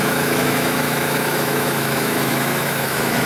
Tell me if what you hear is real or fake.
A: fake